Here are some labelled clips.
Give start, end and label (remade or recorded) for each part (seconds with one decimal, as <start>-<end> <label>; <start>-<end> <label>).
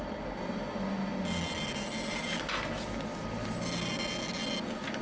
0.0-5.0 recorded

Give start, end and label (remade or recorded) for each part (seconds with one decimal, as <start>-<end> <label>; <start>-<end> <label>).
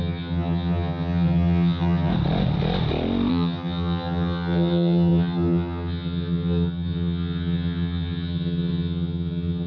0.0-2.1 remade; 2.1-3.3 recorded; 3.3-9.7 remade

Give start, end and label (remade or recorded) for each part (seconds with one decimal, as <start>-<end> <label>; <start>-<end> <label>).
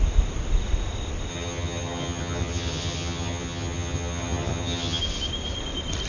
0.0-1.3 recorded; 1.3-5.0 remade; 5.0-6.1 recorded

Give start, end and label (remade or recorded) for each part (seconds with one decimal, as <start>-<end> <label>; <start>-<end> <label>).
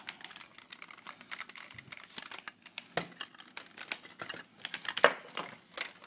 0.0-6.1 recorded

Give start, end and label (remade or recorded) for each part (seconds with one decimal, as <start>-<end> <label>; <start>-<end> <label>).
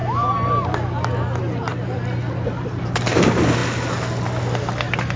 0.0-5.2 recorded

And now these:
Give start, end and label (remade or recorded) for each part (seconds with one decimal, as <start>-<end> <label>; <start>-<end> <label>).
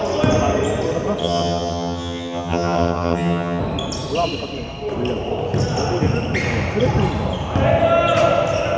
0.0-1.2 recorded; 1.2-3.6 remade; 3.6-8.8 recorded